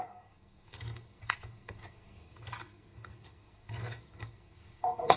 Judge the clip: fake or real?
fake